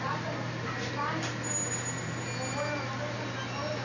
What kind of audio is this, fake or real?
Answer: real